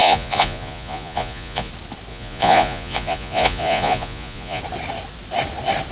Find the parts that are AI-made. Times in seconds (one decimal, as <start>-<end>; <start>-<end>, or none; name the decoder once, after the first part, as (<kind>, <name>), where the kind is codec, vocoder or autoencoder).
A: 0.0-1.7 (vocoder, Vocos); 2.1-4.6